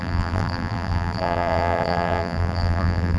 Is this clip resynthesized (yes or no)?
yes